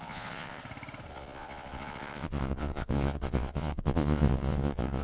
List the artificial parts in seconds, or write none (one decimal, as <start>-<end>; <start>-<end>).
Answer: 0.0-0.6; 1.1-5.0